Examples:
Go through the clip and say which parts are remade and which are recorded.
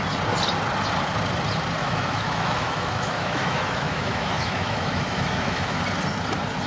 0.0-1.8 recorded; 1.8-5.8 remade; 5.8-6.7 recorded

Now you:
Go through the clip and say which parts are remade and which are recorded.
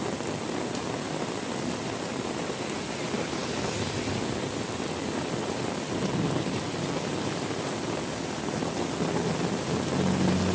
0.0-10.5 recorded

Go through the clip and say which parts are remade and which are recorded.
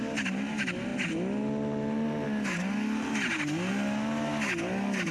0.0-5.1 recorded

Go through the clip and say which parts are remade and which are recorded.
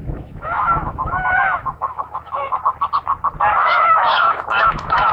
0.0-2.6 remade; 2.6-3.6 recorded; 3.6-5.1 remade